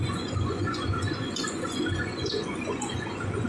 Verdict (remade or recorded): remade